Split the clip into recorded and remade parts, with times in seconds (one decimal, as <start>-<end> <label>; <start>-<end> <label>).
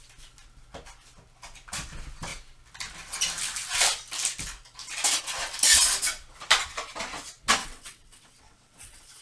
0.0-7.6 recorded; 7.6-9.2 remade